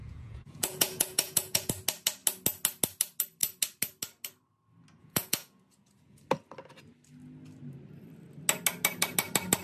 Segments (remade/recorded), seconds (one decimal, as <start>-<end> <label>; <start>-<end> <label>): 0.0-1.7 remade; 1.7-5.0 recorded; 5.0-6.2 remade; 6.2-9.6 recorded